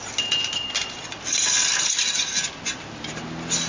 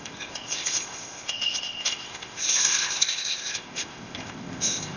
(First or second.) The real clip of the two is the first